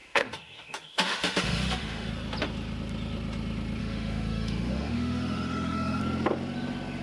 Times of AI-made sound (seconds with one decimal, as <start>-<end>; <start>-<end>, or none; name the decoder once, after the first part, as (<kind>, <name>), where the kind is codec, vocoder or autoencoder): 0.0-2.1 (autoencoder, DAC-VAE); 3.8-6.0